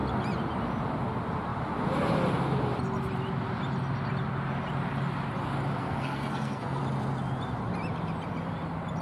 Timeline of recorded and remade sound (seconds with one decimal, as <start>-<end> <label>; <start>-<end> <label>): 0.0-5.8 recorded; 5.8-6.8 remade; 6.8-9.0 recorded